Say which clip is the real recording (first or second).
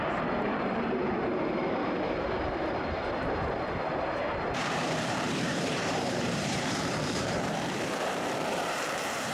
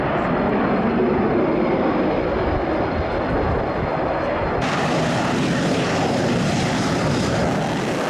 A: second